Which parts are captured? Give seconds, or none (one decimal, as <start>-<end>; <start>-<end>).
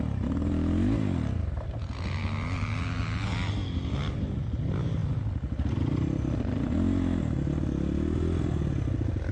0.0-9.3